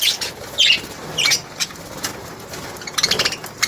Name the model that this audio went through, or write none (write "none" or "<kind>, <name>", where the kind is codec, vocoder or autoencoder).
none